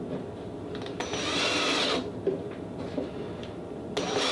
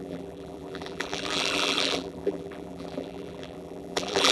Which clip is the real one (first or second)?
first